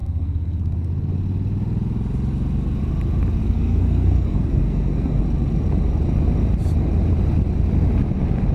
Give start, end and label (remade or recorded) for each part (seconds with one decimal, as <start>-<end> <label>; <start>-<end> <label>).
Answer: 0.0-0.9 remade; 0.9-3.4 recorded; 3.4-5.2 remade; 5.2-8.5 recorded